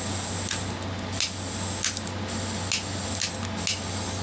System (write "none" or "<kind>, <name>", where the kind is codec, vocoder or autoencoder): none